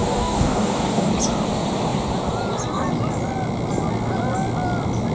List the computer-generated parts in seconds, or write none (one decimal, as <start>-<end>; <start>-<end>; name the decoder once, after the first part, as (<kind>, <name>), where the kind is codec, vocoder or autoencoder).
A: 0.0-1.1 (codec, DAC)